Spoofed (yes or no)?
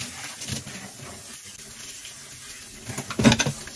no